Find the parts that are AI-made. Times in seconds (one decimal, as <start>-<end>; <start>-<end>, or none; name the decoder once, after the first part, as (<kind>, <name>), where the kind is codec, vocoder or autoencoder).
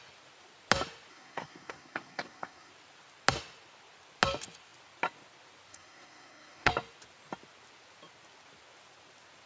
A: 1.1-2.7 (codec, SNAC); 5.7-6.7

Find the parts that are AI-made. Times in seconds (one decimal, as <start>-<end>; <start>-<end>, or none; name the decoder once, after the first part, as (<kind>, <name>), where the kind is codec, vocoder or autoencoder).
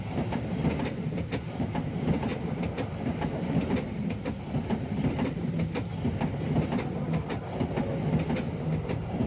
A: none